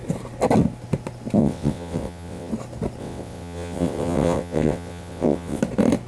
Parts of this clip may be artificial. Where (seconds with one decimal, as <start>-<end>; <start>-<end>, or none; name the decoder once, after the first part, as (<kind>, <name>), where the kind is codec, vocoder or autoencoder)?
1.4-2.5 (vocoder, WaveNeXt); 3.0-5.6